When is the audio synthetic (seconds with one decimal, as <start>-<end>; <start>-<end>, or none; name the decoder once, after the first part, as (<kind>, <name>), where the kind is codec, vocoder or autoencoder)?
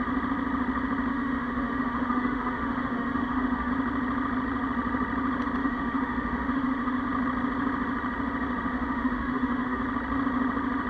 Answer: 1.1-3.7 (autoencoder, DAC-VAE); 5.6-7.0; 8.7-9.8